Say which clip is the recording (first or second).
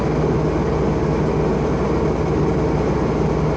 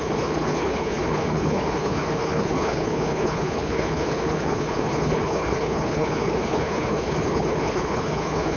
first